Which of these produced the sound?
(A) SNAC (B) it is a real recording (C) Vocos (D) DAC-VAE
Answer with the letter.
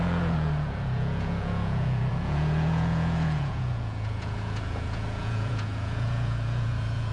C